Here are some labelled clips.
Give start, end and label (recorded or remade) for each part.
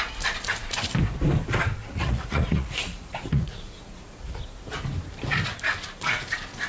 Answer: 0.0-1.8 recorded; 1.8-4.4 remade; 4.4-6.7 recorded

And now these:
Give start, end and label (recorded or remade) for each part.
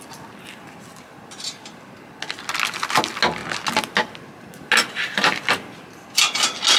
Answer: 0.0-6.8 recorded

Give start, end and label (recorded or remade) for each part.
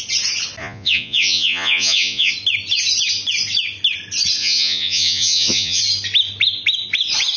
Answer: 0.0-0.6 recorded; 0.6-2.3 remade; 2.3-4.4 recorded; 4.4-5.8 remade; 5.8-7.4 recorded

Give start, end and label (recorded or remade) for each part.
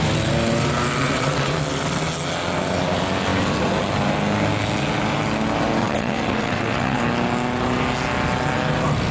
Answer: 0.0-1.0 recorded; 1.0-1.6 remade; 1.6-5.8 recorded; 5.8-7.0 remade; 7.0-9.1 recorded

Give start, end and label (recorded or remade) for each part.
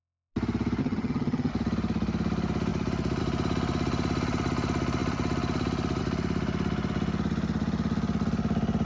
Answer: 0.0-0.8 recorded; 0.8-1.5 remade; 1.5-8.9 recorded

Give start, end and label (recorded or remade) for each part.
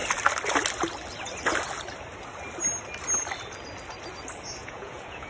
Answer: 0.0-4.6 recorded; 4.6-5.3 remade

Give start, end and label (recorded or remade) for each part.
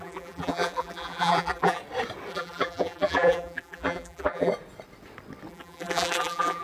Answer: 0.0-1.8 remade; 1.8-2.3 recorded; 2.3-4.5 remade; 4.5-5.5 recorded; 5.5-6.6 remade